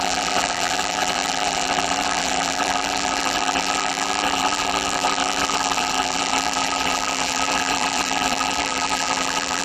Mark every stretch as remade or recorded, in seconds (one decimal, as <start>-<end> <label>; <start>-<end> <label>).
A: 0.0-9.6 remade